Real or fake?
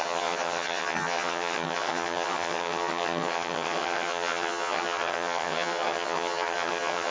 fake